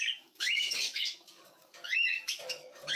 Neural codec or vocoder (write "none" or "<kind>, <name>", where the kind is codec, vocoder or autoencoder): codec, DAC